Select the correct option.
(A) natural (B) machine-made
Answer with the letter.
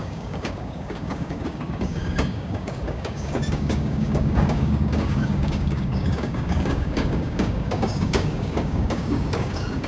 B